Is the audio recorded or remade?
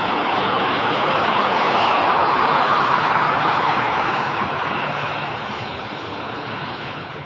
remade